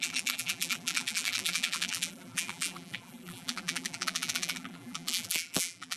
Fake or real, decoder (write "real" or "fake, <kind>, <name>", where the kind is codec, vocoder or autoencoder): fake, vocoder, BigVGAN v2